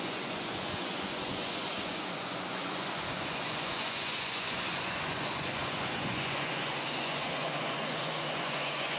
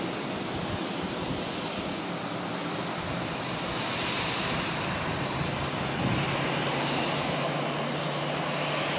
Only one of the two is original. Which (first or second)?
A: second